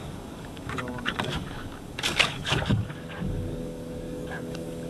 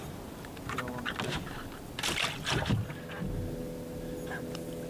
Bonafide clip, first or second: second